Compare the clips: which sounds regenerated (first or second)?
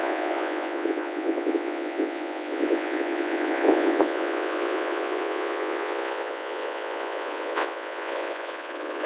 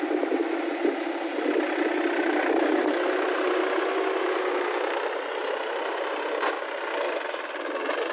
first